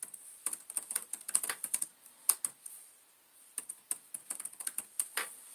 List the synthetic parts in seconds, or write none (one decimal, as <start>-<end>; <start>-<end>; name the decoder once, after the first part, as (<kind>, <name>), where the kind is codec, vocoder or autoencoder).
none

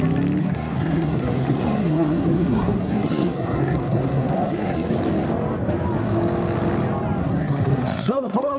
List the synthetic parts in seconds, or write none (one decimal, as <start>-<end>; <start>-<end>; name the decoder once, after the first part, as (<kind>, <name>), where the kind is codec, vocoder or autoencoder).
0.4-4.9 (codec, SNAC); 7.2-8.6

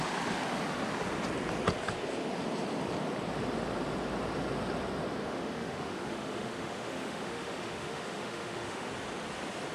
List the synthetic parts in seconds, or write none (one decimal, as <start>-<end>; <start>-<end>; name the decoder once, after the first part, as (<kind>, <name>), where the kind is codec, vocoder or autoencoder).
5.2-8.9 (autoencoder, DAC-VAE)

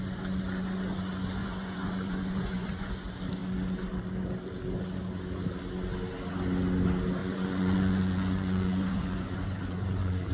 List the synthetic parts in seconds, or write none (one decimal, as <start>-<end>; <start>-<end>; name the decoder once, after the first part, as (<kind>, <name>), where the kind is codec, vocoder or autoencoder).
1.4-2.9 (vocoder, Vocos); 7.2-10.3

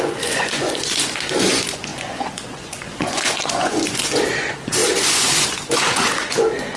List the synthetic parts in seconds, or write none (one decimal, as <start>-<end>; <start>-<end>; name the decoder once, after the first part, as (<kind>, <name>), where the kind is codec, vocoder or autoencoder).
0.0-6.8 (vocoder, Vocos)

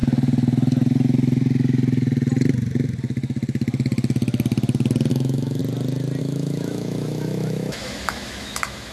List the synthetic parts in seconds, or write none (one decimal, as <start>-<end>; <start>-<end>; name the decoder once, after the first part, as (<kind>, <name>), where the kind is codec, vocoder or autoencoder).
5.1-5.6 (autoencoder, DAC-VAE); 6.2-8.9

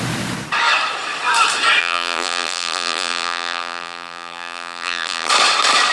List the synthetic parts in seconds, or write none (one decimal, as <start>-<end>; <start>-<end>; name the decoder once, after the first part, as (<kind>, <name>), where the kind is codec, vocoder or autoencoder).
1.8-5.3 (vocoder, BigVGAN v2)